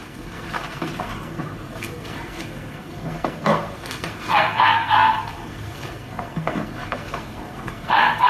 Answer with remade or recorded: remade